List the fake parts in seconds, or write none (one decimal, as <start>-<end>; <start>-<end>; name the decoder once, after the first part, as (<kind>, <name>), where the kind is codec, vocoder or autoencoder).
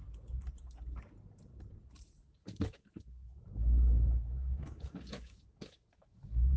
2.4-6.6 (autoencoder, DAC-VAE)